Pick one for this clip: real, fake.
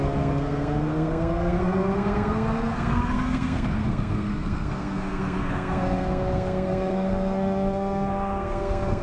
fake